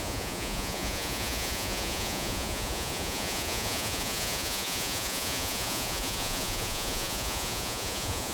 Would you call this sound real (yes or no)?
no